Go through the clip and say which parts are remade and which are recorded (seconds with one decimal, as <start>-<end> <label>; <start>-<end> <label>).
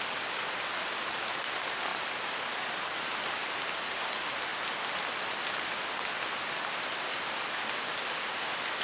0.0-8.8 recorded